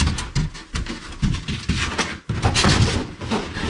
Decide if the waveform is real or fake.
real